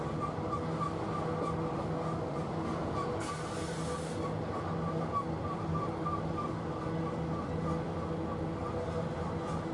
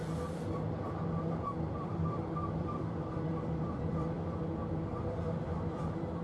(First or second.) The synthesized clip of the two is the second